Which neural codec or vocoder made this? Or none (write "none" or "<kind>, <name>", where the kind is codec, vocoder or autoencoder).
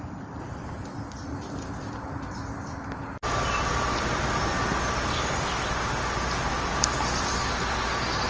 none